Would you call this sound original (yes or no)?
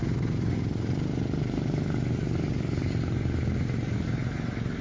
yes